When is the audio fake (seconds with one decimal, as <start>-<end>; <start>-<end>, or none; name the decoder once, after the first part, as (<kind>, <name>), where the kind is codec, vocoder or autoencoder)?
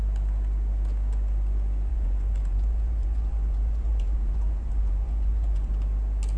1.9-5.7 (vocoder, Vocos)